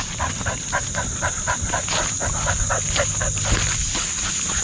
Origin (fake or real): real